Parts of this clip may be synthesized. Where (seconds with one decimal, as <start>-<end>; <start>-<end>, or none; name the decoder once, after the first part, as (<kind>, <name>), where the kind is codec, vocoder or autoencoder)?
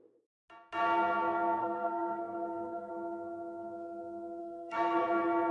1.6-2.9 (codec, SNAC); 4.4-5.0